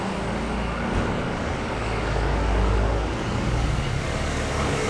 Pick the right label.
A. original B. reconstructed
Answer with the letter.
B